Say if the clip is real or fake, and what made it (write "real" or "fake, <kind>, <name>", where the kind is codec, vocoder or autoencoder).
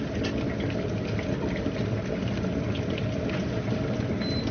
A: real